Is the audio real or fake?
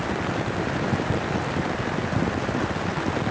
real